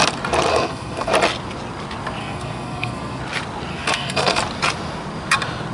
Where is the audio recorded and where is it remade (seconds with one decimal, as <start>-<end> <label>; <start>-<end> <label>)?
0.0-0.5 recorded; 0.5-1.1 remade; 1.1-2.2 recorded; 2.2-3.2 remade; 3.2-3.7 recorded; 3.7-4.4 remade; 4.4-5.7 recorded